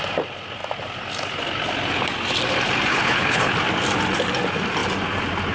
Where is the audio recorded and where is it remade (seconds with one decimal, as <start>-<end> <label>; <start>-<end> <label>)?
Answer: 0.0-2.9 recorded; 2.9-3.5 remade; 3.5-5.5 recorded